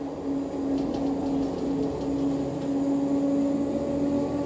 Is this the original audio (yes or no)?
yes